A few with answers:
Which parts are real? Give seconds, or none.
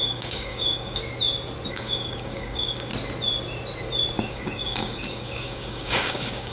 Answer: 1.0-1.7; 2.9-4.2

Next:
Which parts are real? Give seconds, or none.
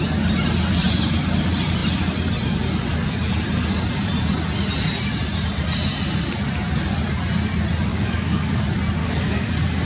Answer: 0.0-7.9; 8.6-9.0; 9.5-9.9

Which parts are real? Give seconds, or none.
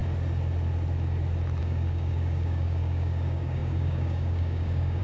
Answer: 0.0-1.6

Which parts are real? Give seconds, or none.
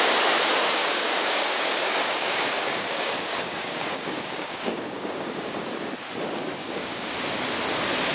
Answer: 0.0-0.8; 5.7-6.6; 7.3-8.1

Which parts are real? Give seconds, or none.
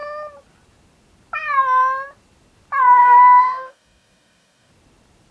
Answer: 0.0-3.0; 4.7-5.3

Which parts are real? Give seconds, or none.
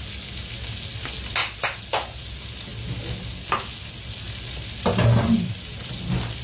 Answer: 0.0-6.4